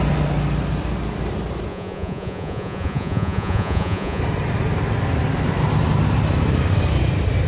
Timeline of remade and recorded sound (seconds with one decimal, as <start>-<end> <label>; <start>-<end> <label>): 0.0-1.7 recorded; 1.7-4.2 remade; 4.2-7.5 recorded